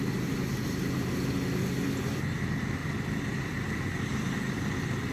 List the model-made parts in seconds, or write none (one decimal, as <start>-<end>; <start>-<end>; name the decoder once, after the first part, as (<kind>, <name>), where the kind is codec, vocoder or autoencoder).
none